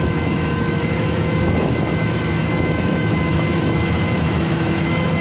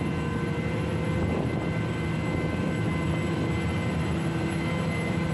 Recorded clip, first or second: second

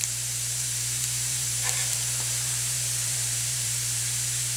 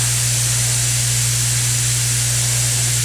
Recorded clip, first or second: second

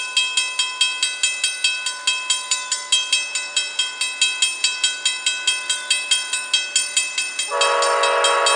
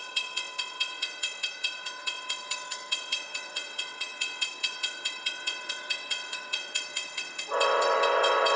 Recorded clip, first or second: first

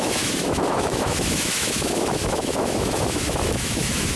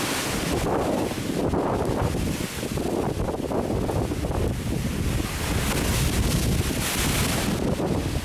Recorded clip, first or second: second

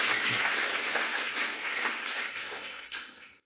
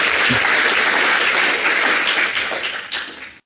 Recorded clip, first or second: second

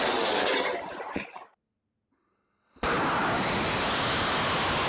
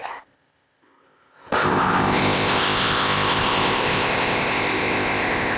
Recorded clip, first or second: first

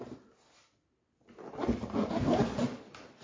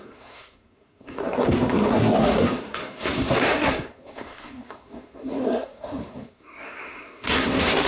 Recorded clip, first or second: first